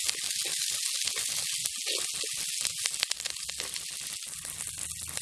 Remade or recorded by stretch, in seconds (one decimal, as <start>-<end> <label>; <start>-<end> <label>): 0.0-5.2 recorded